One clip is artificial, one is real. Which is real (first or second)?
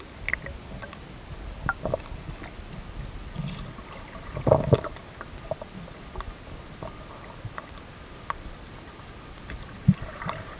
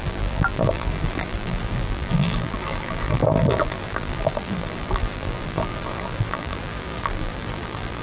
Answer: first